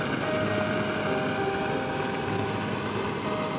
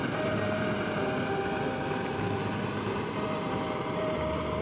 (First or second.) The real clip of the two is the first